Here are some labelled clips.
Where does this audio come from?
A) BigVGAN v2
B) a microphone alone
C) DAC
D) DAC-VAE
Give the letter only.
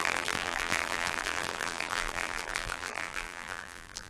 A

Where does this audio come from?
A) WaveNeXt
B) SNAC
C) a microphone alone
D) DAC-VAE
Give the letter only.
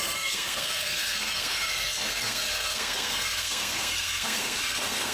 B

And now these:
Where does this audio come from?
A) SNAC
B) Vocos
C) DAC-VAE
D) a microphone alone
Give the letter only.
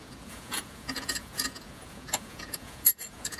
B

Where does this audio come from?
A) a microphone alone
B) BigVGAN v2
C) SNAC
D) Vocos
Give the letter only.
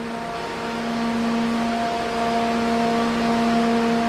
A